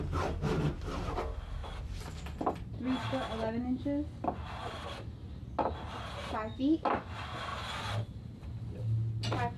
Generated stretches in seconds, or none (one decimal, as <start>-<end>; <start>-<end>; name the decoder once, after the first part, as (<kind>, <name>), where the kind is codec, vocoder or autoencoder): none